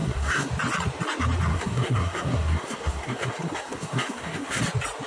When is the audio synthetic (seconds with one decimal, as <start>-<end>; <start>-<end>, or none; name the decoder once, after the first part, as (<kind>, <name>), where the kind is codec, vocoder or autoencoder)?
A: 0.0-0.5 (codec, SNAC); 1.5-4.6